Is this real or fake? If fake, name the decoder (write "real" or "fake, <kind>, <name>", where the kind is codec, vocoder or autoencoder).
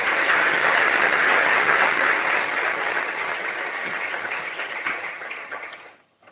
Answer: fake, vocoder, HiFi-GAN